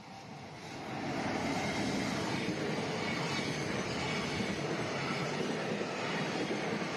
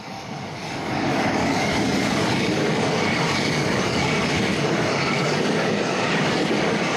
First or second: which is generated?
second